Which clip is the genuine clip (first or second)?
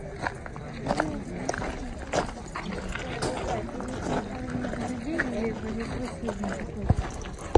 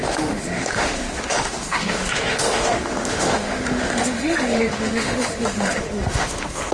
first